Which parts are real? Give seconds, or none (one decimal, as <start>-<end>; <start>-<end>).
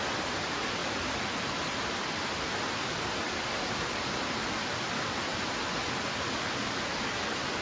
0.0-7.6